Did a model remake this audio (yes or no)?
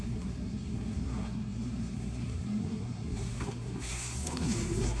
yes